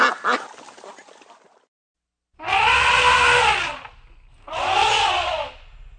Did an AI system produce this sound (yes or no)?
no